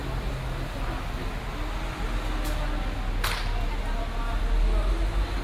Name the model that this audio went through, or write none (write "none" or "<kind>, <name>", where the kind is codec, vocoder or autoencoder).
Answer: none